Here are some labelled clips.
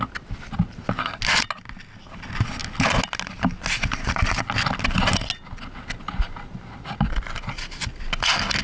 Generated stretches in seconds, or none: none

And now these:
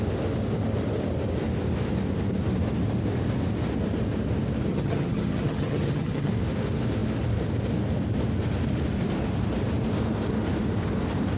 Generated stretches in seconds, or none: 4.7-6.3 (vocoder, HiFi-GAN)

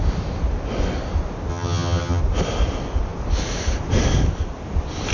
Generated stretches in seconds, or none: 1.5-2.2 (vocoder, HiFi-GAN)

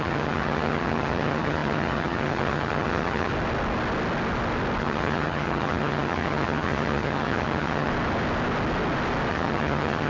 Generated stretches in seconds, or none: 0.0-3.3 (vocoder, HiFi-GAN); 4.8-7.9; 9.3-10.1

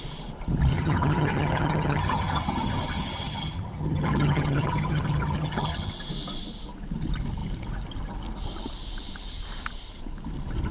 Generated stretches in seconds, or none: 0.7-5.9 (vocoder, HiFi-GAN)

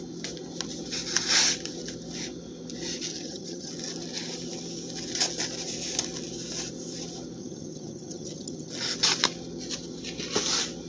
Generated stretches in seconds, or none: 3.1-3.7 (vocoder, HiFi-GAN); 7.4-8.7

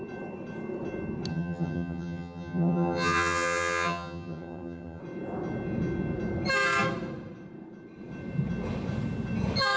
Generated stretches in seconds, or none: 1.3-5.0 (vocoder, HiFi-GAN)